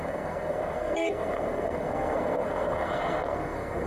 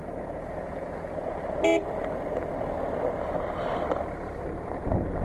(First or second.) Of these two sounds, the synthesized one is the first